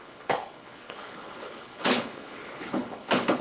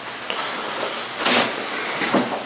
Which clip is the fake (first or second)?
first